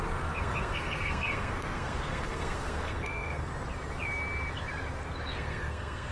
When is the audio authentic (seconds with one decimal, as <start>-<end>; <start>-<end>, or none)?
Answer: 3.5-5.3